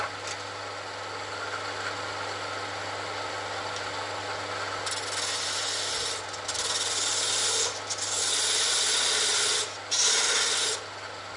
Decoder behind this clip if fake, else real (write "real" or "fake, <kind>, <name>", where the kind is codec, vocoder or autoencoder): real